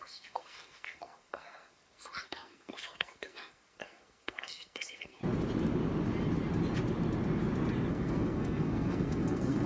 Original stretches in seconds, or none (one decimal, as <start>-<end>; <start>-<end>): 5.2-7.9